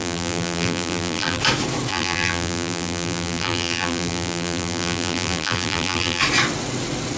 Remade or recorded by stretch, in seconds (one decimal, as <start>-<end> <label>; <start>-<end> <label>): 0.0-1.4 remade; 1.4-1.9 recorded; 1.9-6.2 remade; 6.2-7.2 recorded